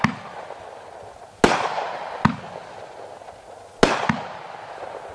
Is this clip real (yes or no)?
yes